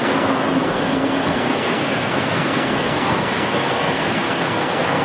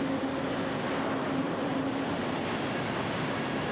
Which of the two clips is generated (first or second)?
first